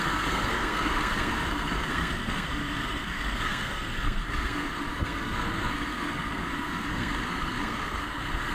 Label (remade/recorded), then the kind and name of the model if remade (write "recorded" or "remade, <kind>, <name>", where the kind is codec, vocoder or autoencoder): remade, codec, SNAC